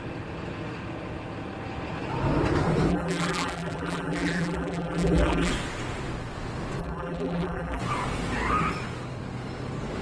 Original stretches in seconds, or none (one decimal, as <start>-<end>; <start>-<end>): 0.0-2.9; 5.5-6.8; 7.8-10.0